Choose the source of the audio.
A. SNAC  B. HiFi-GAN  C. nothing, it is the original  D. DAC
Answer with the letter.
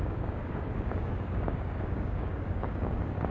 D